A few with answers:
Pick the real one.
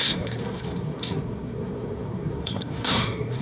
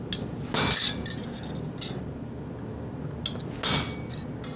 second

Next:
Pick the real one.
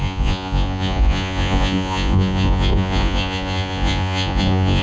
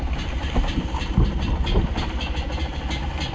second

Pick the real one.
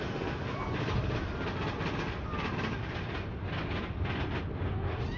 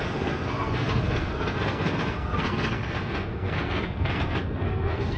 first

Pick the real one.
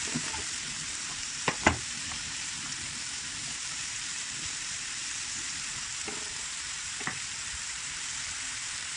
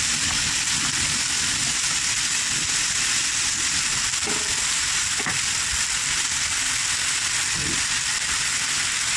second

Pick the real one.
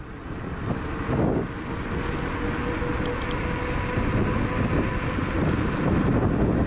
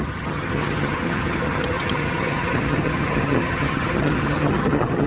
first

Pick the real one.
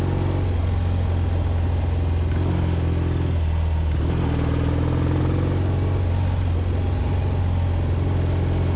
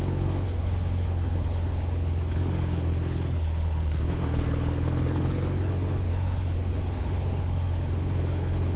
first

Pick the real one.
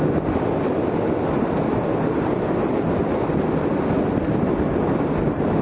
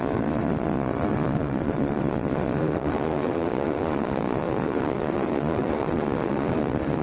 first